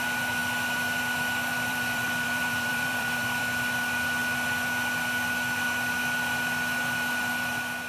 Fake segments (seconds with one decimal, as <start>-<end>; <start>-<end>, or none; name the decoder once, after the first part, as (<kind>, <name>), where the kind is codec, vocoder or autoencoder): 1.5-3.4 (vocoder, BigVGAN v2)